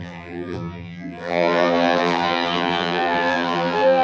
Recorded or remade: remade